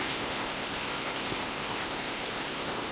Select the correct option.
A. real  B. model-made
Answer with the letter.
B